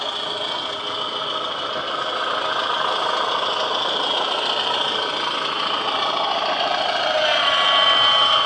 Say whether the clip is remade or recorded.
recorded